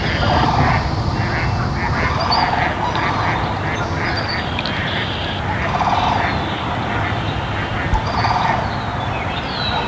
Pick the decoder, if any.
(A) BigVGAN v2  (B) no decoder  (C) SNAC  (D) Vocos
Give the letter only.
B